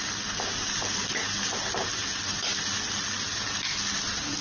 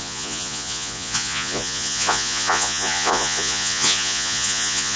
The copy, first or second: second